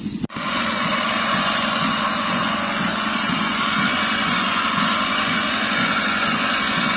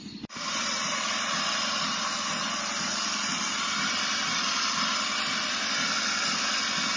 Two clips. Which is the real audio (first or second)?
second